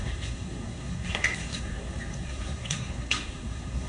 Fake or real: fake